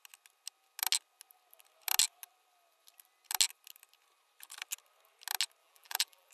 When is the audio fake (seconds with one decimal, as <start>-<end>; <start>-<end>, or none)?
5.6-6.3